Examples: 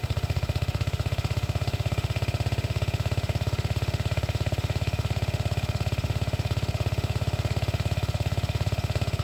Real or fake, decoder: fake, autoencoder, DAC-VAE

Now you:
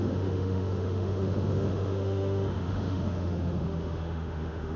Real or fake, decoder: fake, autoencoder, DAC-VAE